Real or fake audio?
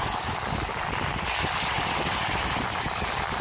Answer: real